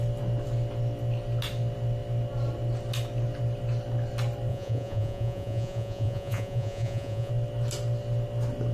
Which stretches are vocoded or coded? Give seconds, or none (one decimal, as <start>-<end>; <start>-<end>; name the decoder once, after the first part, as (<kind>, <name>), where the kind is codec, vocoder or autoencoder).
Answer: 4.5-7.3 (vocoder, Vocos)